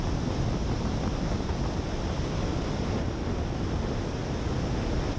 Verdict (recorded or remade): recorded